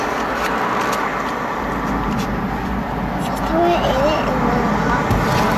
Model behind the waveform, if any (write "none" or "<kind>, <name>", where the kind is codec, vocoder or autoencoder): none